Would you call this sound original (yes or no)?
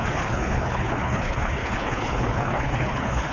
no